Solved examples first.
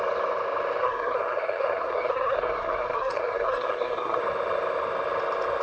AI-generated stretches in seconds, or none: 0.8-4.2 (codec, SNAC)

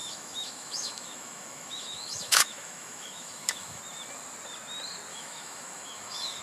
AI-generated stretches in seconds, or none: 0.0-3.8 (autoencoder, DAC-VAE); 5.1-6.4

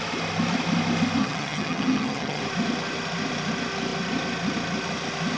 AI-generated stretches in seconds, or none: 1.2-2.4 (vocoder, HiFi-GAN)

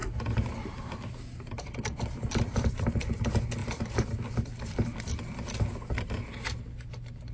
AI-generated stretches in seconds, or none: none